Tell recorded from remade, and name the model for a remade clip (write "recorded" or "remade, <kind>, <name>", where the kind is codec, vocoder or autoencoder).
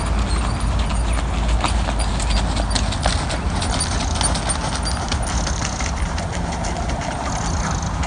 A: recorded